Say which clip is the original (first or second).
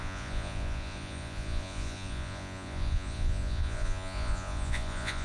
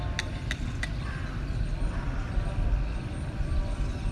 second